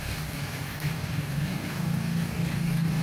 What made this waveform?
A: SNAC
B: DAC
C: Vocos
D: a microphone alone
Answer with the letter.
B